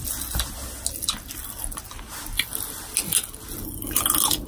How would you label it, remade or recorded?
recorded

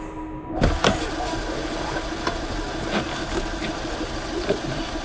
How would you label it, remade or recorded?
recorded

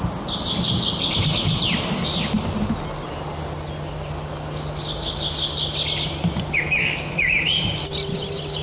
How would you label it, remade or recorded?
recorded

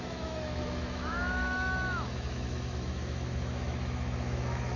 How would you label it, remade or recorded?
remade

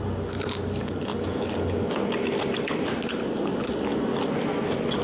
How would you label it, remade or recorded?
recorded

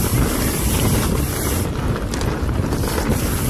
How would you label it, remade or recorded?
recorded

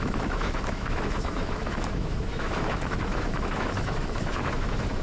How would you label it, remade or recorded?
remade